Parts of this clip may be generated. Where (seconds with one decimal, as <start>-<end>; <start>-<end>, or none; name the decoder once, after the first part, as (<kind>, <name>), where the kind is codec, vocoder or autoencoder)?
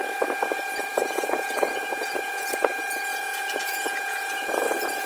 0.9-2.7 (vocoder, Vocos); 3.1-5.1